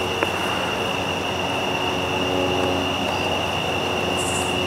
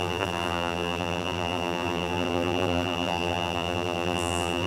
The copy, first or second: second